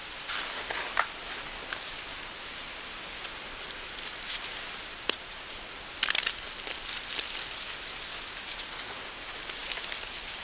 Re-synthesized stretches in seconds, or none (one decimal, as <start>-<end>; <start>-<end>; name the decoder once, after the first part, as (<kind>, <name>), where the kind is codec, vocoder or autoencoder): 2.4-10.4 (vocoder, BigVGAN v2)